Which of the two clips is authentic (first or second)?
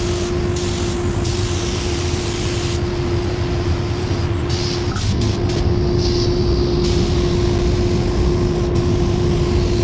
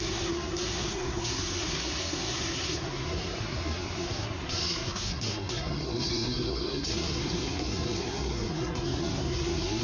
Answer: first